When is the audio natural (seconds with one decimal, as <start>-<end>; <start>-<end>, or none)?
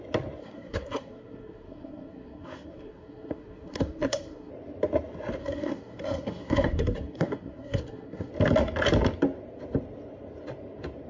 0.0-0.4; 4.5-5.4; 8.3-11.1